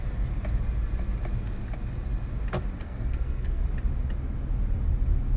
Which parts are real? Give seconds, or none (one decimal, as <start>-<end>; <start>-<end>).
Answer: 0.0-2.8; 3.6-5.4